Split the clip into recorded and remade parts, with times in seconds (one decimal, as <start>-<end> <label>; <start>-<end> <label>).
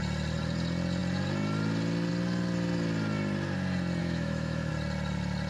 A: 0.0-4.0 recorded; 4.0-4.7 remade; 4.7-5.5 recorded